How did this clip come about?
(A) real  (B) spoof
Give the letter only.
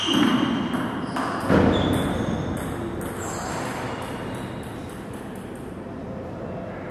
A